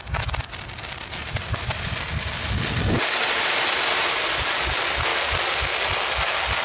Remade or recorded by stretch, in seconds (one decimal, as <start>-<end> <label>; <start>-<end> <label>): 0.0-1.2 recorded; 1.2-1.9 remade; 1.9-3.2 recorded; 3.2-4.1 remade; 4.1-6.6 recorded